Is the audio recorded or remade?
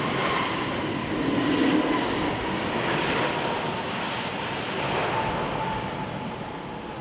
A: recorded